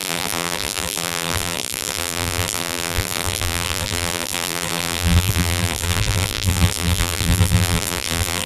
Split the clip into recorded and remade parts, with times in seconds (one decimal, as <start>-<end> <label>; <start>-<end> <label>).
0.0-8.5 remade